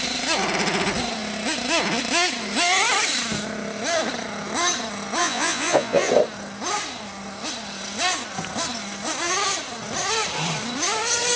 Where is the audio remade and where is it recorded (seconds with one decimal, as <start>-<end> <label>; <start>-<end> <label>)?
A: 0.0-5.2 recorded; 5.2-6.1 remade; 6.1-11.4 recorded